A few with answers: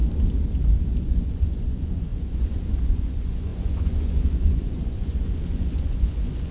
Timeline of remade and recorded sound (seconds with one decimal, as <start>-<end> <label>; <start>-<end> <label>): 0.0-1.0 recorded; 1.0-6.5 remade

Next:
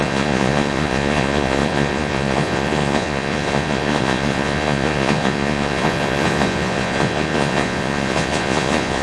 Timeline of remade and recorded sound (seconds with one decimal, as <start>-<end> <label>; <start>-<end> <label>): 0.0-9.0 remade

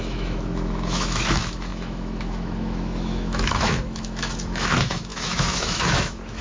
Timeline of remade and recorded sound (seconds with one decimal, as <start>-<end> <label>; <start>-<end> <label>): 0.0-6.4 remade

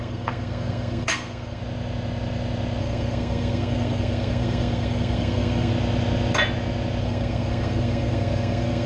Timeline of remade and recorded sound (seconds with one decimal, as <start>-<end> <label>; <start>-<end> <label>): 0.0-1.6 remade; 1.6-2.8 recorded; 2.8-5.7 remade; 5.7-7.0 recorded; 7.0-8.9 remade

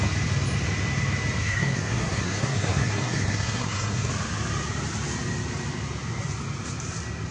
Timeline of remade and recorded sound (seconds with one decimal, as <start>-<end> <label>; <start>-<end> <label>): 0.0-1.4 recorded; 1.4-4.1 remade; 4.1-7.3 recorded

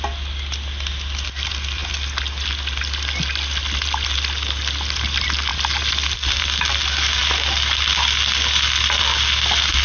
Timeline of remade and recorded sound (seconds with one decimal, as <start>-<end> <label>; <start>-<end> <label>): 0.0-9.8 recorded

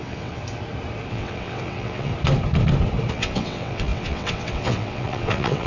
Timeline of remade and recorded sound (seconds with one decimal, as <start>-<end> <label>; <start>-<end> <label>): 0.0-0.4 remade; 0.4-1.1 recorded; 1.1-2.1 remade; 2.1-3.1 recorded; 3.1-5.7 remade